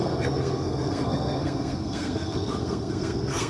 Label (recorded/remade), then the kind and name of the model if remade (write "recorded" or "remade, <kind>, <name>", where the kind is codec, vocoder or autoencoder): remade, codec, SNAC